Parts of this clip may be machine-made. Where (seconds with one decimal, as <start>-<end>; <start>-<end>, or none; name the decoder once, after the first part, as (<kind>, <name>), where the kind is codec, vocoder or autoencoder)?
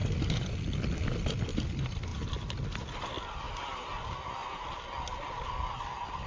none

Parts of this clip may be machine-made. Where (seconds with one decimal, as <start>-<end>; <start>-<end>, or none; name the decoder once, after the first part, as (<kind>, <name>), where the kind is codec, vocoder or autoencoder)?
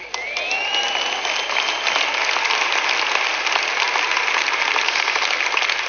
none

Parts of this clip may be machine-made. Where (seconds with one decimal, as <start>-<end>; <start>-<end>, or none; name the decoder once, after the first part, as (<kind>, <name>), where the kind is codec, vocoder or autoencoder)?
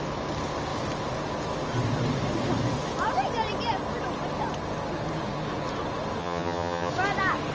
6.2-6.9 (vocoder, HiFi-GAN)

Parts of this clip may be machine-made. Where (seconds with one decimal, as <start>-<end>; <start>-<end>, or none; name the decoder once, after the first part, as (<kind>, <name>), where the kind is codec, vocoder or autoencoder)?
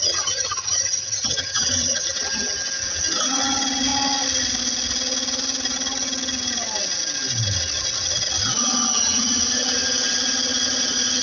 0.0-2.1 (vocoder, HiFi-GAN)